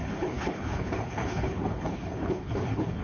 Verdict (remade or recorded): remade